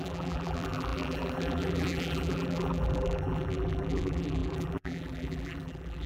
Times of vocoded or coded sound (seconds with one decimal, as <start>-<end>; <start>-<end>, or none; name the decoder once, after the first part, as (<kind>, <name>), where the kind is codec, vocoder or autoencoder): 0.0-6.1 (vocoder, BigVGAN v2)